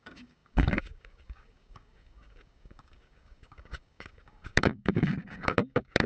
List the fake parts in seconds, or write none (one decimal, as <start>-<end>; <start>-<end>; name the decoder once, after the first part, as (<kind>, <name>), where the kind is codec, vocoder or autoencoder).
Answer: 0.0-6.1 (codec, DAC)